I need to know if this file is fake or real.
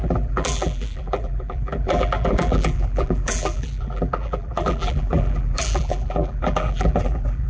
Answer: fake